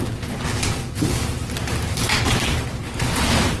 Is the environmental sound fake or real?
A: real